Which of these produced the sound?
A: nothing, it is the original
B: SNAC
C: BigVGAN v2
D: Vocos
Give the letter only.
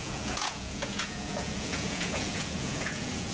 D